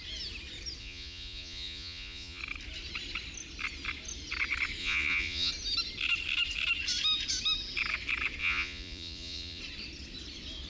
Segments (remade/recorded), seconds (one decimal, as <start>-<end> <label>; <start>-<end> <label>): 0.0-0.8 recorded; 0.8-2.4 remade; 2.4-4.8 recorded; 4.8-5.5 remade; 5.5-8.4 recorded; 8.4-9.6 remade; 9.6-10.7 recorded